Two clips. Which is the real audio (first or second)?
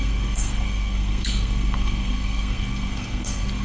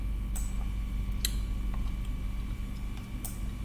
second